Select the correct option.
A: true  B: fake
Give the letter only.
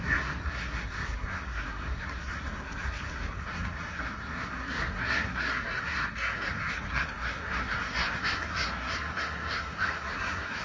B